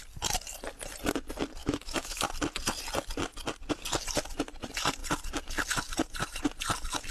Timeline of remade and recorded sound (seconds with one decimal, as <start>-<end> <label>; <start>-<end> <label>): 0.0-1.6 recorded; 1.6-2.3 remade; 2.3-7.1 recorded